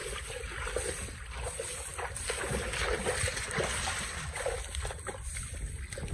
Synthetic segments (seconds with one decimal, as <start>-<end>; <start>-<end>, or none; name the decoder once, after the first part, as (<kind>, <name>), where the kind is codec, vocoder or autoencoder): none